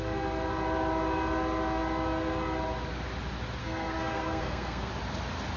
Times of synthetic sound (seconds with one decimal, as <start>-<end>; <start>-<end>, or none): 3.6-4.9

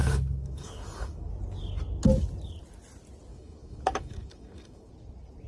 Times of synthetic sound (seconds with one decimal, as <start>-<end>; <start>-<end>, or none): 0.0-1.3; 3.3-4.9

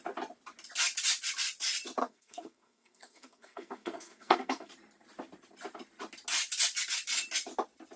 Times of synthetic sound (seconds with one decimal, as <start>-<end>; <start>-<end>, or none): 2.0-4.7

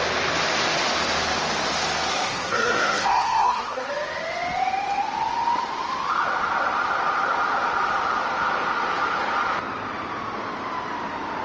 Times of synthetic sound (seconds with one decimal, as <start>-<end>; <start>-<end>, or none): 2.1-3.9